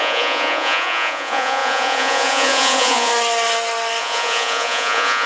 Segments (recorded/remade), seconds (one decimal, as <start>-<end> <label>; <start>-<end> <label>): 0.0-3.1 remade; 3.1-4.0 recorded; 4.0-5.3 remade